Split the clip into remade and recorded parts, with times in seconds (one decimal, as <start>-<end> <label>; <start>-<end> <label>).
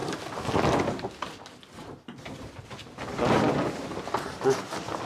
0.0-5.1 recorded